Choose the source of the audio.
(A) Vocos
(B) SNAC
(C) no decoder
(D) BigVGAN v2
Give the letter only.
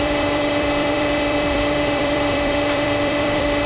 D